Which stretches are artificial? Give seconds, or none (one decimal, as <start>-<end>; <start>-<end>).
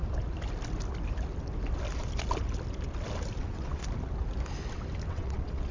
3.4-3.8; 5.1-5.7